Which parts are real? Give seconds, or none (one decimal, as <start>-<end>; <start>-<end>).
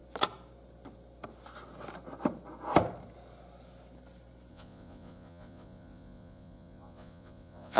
0.0-4.5